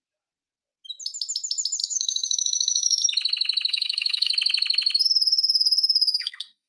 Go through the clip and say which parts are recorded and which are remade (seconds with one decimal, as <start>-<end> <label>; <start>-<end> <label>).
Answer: 0.0-1.8 recorded; 1.8-3.0 remade; 3.0-3.7 recorded; 3.7-4.3 remade; 4.3-6.1 recorded; 6.1-6.7 remade